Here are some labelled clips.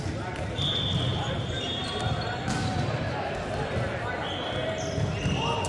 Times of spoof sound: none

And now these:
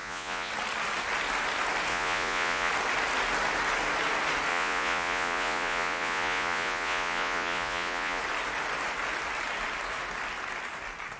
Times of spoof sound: 0.0-0.5; 1.9-2.7; 4.5-8.2

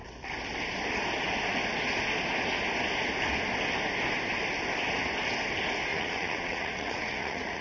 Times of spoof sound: 5.9-7.6

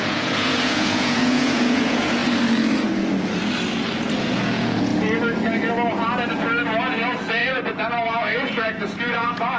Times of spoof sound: 0.0-2.2; 4.2-4.9; 6.8-7.4; 8.1-9.6

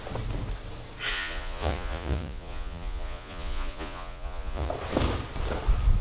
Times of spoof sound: 1.1-4.7

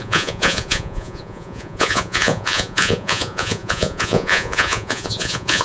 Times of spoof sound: 0.0-5.6